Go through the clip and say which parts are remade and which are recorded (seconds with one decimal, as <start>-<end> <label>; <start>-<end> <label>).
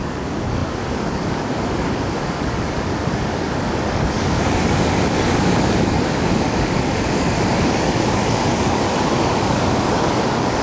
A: 0.0-10.6 remade